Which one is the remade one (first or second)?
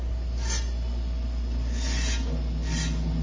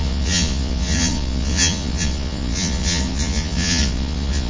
second